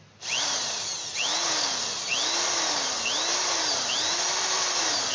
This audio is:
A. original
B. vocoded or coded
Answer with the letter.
A